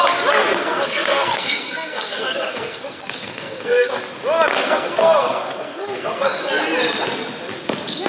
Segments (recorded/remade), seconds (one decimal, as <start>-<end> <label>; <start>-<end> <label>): 0.0-0.4 recorded; 0.4-4.0 remade; 4.0-4.5 recorded; 4.5-6.5 remade; 6.5-8.1 recorded